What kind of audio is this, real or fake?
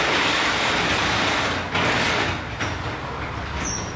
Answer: real